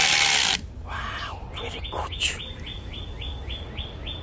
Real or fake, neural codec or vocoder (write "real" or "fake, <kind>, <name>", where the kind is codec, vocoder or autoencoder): real